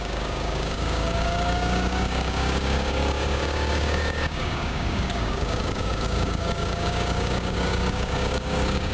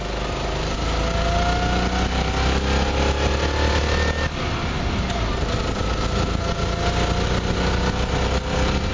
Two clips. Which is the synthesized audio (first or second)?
first